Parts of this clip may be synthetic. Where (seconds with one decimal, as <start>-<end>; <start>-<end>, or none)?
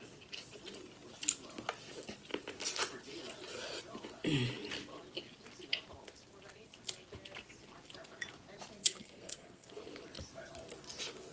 8.8-9.8